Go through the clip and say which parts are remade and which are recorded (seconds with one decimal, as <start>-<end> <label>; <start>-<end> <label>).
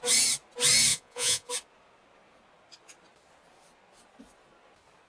0.0-0.9 recorded; 0.9-1.5 remade; 1.5-5.1 recorded